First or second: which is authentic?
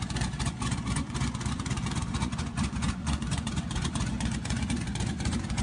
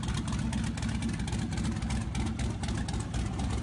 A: second